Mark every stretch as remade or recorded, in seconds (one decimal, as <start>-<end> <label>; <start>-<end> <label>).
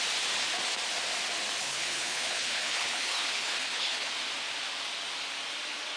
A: 0.0-1.6 recorded; 1.6-4.1 remade; 4.1-6.0 recorded